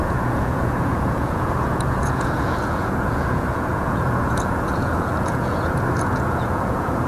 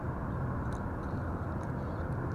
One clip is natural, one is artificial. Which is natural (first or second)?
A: second